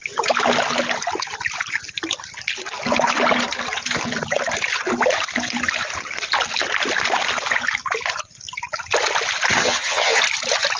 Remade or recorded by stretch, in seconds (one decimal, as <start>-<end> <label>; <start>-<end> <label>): 0.0-9.6 recorded; 9.6-10.2 remade; 10.2-10.8 recorded